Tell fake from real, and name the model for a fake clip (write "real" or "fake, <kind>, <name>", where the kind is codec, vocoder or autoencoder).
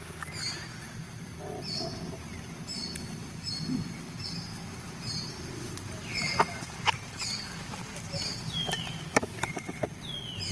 real